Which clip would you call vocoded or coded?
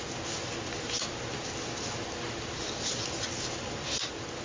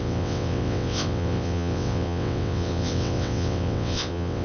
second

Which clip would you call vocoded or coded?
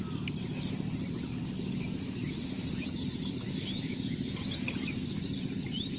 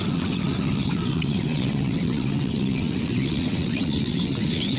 second